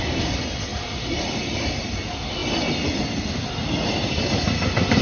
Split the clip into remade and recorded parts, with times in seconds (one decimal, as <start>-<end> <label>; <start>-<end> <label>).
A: 0.0-5.0 recorded